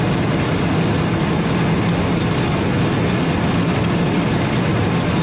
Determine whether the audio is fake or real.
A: real